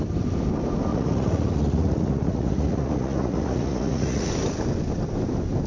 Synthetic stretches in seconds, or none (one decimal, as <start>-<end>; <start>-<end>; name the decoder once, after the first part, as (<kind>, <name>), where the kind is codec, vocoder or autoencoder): 0.9-4.3 (vocoder, Vocos)